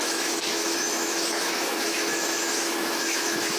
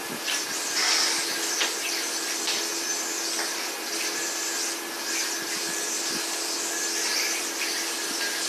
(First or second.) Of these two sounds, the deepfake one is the first